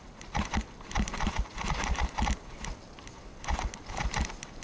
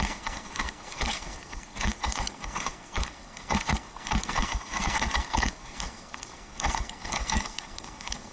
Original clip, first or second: first